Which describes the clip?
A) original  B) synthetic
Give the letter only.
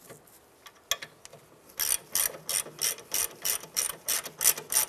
A